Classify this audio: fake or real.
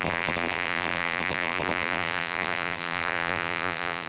fake